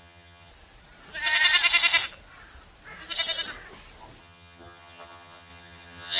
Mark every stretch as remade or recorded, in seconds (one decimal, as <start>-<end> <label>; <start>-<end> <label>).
0.0-0.5 remade; 0.5-4.2 recorded; 4.2-6.2 remade